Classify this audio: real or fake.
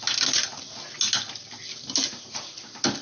real